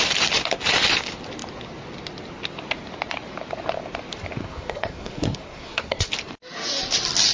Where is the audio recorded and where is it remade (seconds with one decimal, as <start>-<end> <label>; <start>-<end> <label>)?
0.0-4.4 recorded; 4.4-6.1 remade; 6.1-7.3 recorded